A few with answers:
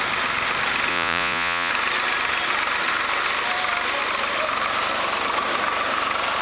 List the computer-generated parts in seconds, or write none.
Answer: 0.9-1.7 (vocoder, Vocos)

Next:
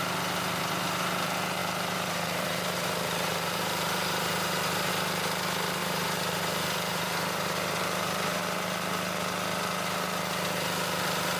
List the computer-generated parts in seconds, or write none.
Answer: 1.6-4.9 (vocoder, BigVGAN v2); 5.8-8.4

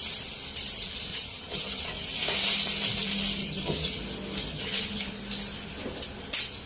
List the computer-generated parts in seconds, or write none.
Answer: 1.1-1.8 (vocoder, HiFi-GAN); 3.4-4.0; 4.5-5.2

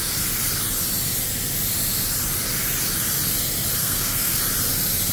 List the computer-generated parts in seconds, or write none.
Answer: 3.8-4.4 (codec, SNAC)

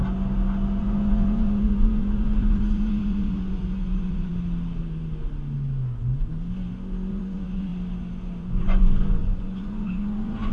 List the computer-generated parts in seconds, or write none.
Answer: 0.8-4.3 (vocoder, Vocos); 7.1-7.7; 8.4-10.5